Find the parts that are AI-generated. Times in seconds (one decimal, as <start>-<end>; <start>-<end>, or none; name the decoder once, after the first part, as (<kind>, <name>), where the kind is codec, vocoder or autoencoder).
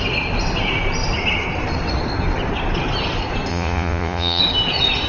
3.5-4.4 (vocoder, Vocos)